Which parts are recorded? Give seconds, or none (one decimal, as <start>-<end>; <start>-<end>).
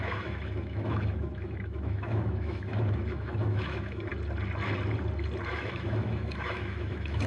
4.1-5.5